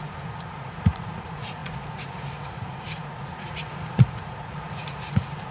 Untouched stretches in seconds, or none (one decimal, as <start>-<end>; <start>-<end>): none